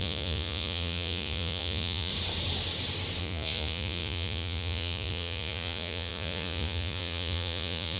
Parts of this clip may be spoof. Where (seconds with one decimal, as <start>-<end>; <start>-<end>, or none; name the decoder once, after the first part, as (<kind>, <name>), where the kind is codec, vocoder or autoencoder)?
0.0-2.1 (vocoder, Vocos); 3.2-8.0